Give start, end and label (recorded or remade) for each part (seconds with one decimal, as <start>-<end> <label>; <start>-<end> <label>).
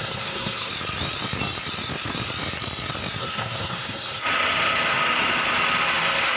0.0-0.7 remade; 0.7-3.2 recorded; 3.2-4.2 remade; 4.2-6.4 recorded